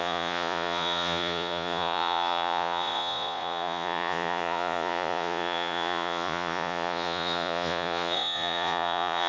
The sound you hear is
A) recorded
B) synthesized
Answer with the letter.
B